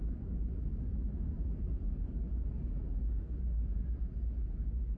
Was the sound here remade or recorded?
recorded